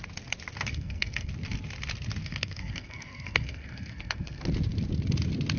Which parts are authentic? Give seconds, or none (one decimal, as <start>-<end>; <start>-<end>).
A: 0.0-0.7; 1.3-2.2; 4.4-5.6

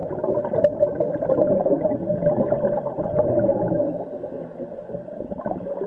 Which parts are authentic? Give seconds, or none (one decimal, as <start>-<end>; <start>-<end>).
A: 0.0-2.2; 3.1-3.5; 4.3-5.9

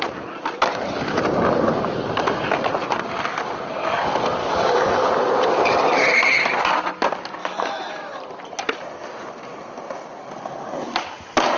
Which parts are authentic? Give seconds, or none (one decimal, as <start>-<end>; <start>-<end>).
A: 0.0-4.4; 5.1-7.4; 8.2-11.6